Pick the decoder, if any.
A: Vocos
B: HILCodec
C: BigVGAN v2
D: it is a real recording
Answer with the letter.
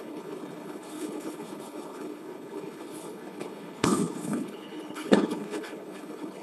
B